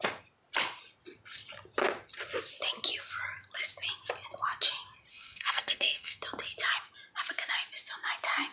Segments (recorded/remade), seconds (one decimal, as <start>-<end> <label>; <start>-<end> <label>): 0.0-5.1 recorded; 5.1-6.2 remade; 6.2-8.5 recorded

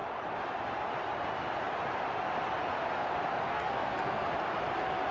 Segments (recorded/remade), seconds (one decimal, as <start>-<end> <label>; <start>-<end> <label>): 0.0-3.5 recorded; 3.5-4.3 remade; 4.3-5.1 recorded

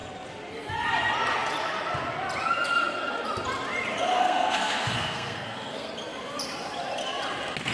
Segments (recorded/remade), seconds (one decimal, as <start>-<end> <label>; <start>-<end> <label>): 0.0-4.1 recorded; 4.1-5.9 remade; 5.9-7.7 recorded

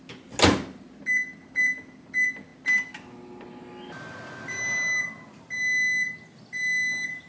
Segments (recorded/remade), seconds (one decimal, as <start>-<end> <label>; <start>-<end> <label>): 0.0-7.3 recorded

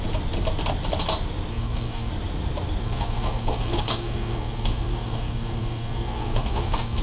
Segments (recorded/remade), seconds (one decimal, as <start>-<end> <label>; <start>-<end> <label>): 0.0-1.5 recorded; 1.5-2.1 remade; 2.1-2.8 recorded; 2.8-7.0 remade

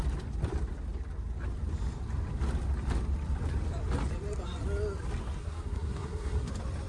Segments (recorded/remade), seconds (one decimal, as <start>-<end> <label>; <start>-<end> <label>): 0.0-5.4 recorded; 5.4-6.5 remade; 6.5-6.9 recorded